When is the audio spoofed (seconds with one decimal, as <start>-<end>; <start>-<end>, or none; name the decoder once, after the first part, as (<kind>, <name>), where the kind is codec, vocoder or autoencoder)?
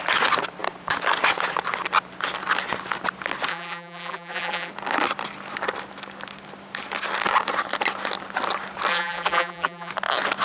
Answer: 3.5-4.7 (vocoder, BigVGAN v2); 8.9-9.9